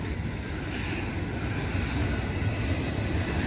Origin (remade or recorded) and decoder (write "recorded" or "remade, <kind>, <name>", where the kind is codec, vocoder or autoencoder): recorded